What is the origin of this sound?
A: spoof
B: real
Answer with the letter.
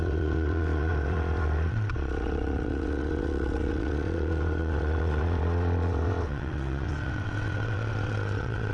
A